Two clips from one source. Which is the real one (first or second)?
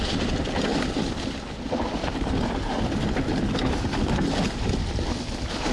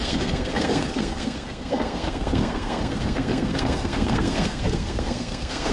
first